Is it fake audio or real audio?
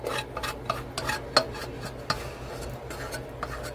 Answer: real